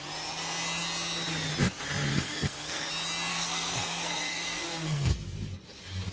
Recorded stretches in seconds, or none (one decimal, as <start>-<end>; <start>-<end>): 0.0-2.1; 2.9-3.3; 5.1-6.1